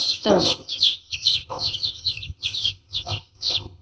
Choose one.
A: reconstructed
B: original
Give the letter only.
A